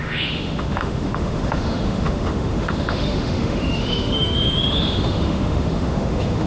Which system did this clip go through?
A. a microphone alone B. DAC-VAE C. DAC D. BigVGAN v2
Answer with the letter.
B